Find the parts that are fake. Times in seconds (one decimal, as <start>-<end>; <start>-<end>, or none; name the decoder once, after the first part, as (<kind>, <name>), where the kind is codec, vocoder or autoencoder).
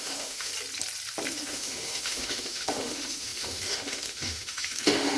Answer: 0.0-0.5 (autoencoder, DAC-VAE); 1.3-5.2